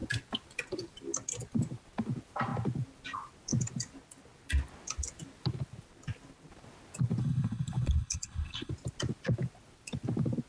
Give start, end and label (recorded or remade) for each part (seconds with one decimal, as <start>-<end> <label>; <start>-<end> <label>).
0.0-7.2 recorded; 7.2-8.7 remade; 8.7-10.5 recorded